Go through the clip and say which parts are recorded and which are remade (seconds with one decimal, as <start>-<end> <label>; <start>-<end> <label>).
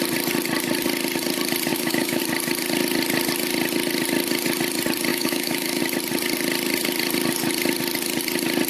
0.0-1.7 recorded; 1.7-2.2 remade; 2.2-5.1 recorded; 5.1-5.8 remade; 5.8-8.7 recorded